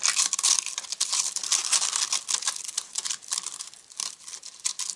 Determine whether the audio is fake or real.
real